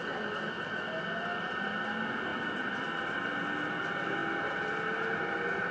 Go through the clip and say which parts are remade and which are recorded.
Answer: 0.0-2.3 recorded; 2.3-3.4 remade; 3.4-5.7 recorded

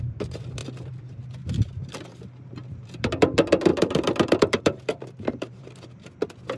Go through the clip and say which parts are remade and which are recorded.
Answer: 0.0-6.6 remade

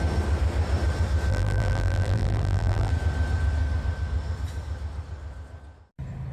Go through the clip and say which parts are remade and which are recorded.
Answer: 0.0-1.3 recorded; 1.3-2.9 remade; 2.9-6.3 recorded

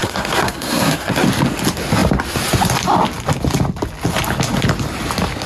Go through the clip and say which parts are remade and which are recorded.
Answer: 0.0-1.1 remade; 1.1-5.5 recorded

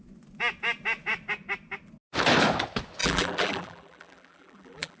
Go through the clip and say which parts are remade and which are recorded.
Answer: 0.0-3.0 recorded; 3.0-5.0 remade

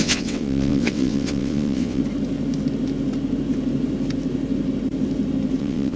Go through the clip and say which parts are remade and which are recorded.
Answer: 0.0-2.0 remade; 2.0-5.6 recorded; 5.6-6.0 remade

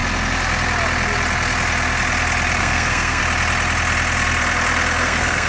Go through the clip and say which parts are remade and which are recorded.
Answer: 0.0-2.6 recorded; 2.6-3.2 remade; 3.2-5.0 recorded; 5.0-5.5 remade

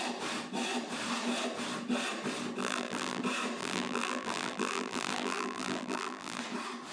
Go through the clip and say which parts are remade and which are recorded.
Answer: 0.0-2.6 recorded; 2.6-3.2 remade; 3.2-3.6 recorded; 3.6-6.4 remade; 6.4-6.9 recorded